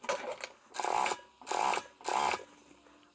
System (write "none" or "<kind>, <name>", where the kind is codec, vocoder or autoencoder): none